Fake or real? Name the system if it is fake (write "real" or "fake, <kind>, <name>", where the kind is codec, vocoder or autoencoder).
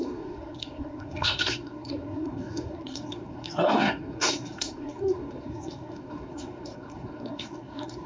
fake, codec, SNAC